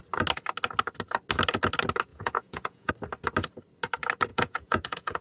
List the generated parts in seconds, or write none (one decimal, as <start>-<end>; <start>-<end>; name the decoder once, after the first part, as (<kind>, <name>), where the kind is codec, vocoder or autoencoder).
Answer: 2.1-2.9 (vocoder, Vocos); 4.3-5.2